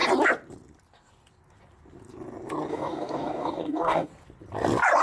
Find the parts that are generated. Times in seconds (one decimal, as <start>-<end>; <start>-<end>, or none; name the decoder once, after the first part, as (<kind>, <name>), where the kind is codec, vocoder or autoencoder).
2.7-4.1 (codec, DAC)